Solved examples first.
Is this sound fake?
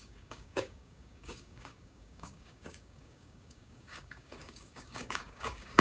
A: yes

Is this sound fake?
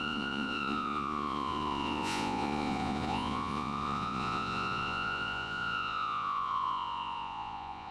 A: yes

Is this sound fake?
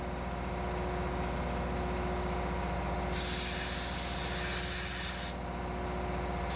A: no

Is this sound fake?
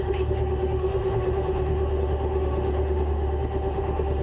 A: yes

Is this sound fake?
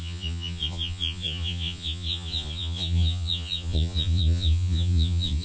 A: yes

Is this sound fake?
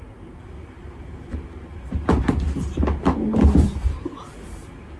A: no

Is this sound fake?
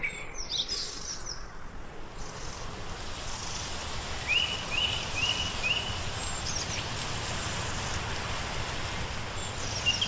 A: no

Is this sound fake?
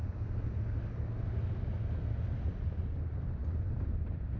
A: no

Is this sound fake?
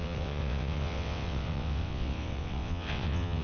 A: yes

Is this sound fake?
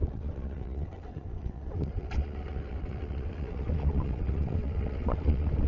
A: yes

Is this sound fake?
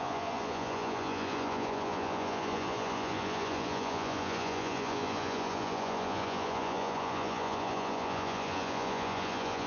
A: yes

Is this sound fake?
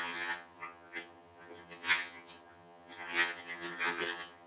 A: yes